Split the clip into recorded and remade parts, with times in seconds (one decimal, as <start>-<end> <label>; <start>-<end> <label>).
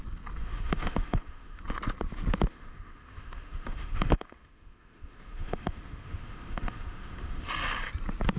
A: 0.0-0.4 recorded; 0.4-1.6 remade; 1.6-2.5 recorded; 2.5-7.5 remade; 7.5-8.4 recorded